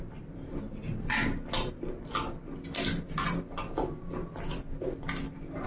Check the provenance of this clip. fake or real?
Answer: real